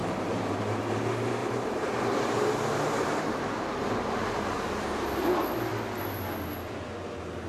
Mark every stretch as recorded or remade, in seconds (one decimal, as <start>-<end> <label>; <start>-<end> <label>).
0.0-0.6 remade; 0.6-1.4 recorded; 1.4-4.2 remade; 4.2-7.5 recorded